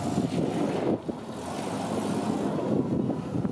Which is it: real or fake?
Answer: real